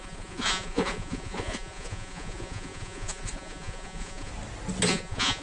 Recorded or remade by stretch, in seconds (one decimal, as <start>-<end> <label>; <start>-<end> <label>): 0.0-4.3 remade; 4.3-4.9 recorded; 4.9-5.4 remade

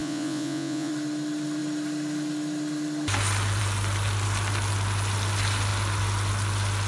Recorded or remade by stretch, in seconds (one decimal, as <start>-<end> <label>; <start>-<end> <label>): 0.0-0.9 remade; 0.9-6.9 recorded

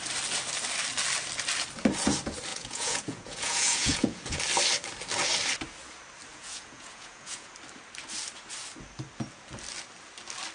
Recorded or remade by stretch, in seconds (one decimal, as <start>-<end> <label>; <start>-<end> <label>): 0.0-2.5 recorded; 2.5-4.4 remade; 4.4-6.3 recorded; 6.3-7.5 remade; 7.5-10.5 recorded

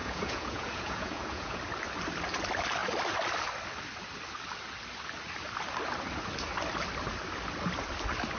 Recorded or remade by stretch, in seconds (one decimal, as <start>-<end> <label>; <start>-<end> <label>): 0.0-1.6 remade; 1.6-8.4 recorded